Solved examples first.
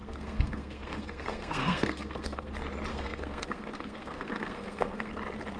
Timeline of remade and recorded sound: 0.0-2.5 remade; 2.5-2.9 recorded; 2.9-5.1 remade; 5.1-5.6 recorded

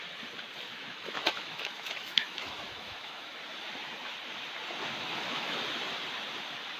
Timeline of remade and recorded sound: 0.0-0.7 recorded; 0.7-3.4 remade; 3.4-4.8 recorded; 4.8-5.6 remade; 5.6-6.8 recorded

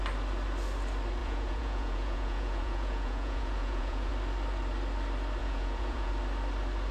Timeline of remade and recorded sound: 0.0-1.2 recorded; 1.2-4.1 remade; 4.1-5.4 recorded; 5.4-6.1 remade; 6.1-6.9 recorded

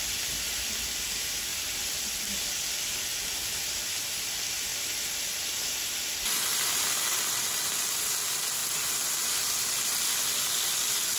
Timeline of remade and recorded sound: 0.0-1.5 recorded; 1.5-2.2 remade; 2.2-4.7 recorded; 4.7-7.4 remade; 7.4-11.2 recorded

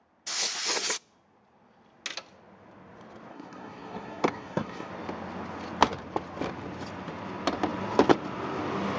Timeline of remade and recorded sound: 0.0-3.3 recorded; 3.3-4.9 remade; 4.9-9.0 recorded

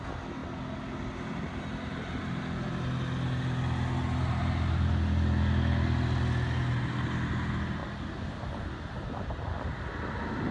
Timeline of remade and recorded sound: 0.0-10.5 recorded

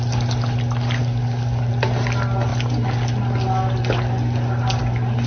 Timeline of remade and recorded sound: 0.0-1.0 recorded; 1.0-1.7 remade; 1.7-5.3 recorded

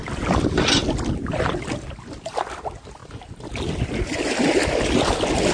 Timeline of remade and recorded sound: 0.0-5.5 recorded